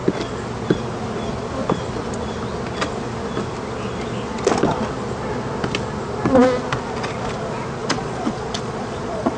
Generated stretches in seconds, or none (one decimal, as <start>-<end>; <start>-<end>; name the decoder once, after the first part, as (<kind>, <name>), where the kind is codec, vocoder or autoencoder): 7.8-9.4 (vocoder, Vocos)